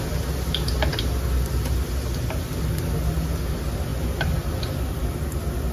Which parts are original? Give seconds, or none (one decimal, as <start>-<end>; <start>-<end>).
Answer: 0.0-5.7

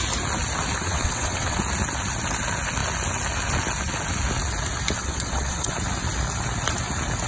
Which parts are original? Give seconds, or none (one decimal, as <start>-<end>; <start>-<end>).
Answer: 0.0-0.8; 1.6-5.0; 5.7-7.3

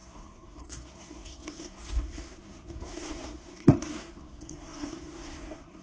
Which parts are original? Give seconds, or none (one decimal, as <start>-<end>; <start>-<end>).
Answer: none